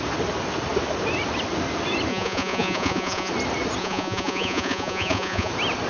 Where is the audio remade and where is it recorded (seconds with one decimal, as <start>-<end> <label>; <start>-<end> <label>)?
0.0-2.1 recorded; 2.1-3.3 remade; 3.3-3.8 recorded; 3.8-5.5 remade; 5.5-5.9 recorded